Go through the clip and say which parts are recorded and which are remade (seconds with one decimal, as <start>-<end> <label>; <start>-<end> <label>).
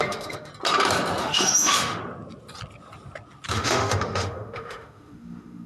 0.0-0.5 remade; 0.5-1.2 recorded; 1.2-2.0 remade; 2.0-3.5 recorded; 3.5-5.7 remade